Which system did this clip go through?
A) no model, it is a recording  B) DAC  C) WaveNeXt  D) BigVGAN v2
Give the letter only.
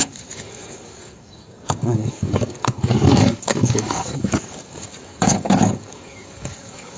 B